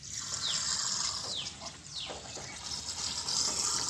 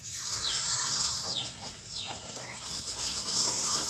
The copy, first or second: second